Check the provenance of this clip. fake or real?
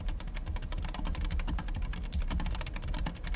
real